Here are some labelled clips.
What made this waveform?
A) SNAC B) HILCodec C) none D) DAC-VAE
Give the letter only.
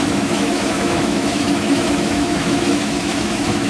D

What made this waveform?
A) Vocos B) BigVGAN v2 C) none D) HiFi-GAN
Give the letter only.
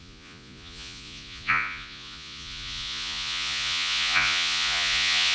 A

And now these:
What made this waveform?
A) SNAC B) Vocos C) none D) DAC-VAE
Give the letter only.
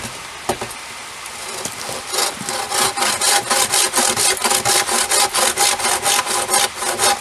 C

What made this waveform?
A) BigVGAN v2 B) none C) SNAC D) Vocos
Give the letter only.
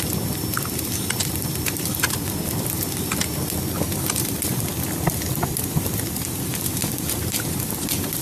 A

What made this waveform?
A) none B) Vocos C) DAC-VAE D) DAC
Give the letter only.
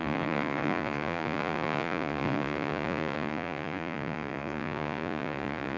B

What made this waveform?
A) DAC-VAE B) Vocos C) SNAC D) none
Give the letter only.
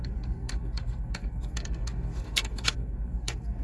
C